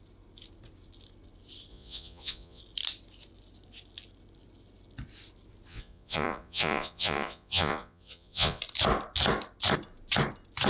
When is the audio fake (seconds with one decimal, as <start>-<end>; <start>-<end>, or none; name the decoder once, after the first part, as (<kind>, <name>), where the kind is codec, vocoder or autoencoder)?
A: 1.7-2.6 (vocoder, Vocos); 5.7-8.6